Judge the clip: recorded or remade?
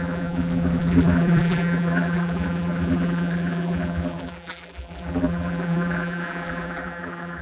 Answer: remade